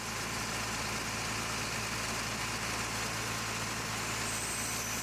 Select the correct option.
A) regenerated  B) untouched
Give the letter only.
B